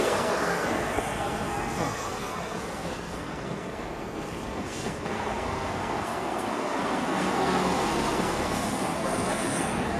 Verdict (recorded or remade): remade